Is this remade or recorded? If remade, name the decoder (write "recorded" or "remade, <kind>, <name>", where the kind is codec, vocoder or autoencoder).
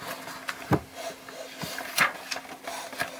recorded